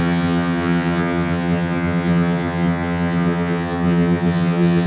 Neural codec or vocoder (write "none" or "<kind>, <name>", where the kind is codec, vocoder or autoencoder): vocoder, HiFi-GAN